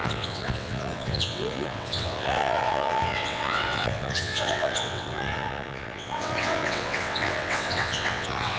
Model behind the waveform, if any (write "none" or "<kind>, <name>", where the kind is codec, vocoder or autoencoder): vocoder, WaveNeXt